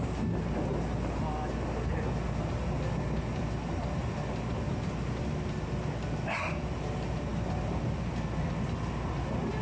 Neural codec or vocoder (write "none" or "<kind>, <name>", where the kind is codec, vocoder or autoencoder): none